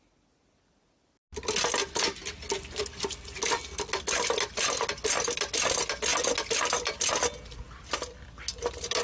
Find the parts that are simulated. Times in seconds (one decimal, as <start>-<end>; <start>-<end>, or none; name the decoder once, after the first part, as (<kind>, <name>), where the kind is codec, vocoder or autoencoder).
none